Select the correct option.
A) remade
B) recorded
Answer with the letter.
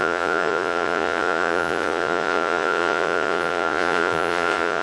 A